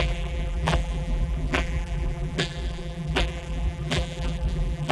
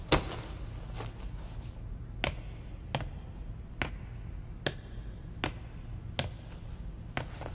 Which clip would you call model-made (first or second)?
first